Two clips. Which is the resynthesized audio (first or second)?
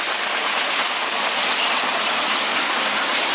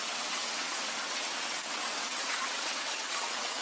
second